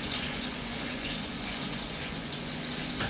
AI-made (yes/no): yes